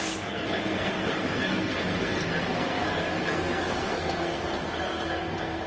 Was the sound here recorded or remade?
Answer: remade